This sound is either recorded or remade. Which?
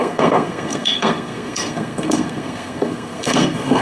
remade